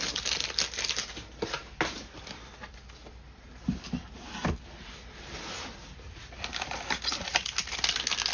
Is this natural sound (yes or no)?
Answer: yes